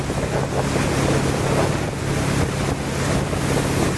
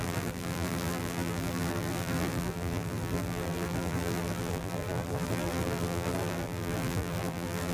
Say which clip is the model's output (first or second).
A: second